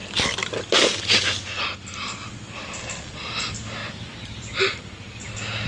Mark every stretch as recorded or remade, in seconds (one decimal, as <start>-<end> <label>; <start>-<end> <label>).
0.0-3.8 recorded; 3.8-4.8 remade; 4.8-5.7 recorded